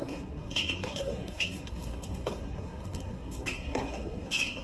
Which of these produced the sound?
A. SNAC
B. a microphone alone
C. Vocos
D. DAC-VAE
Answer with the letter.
A